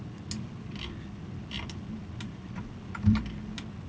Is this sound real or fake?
real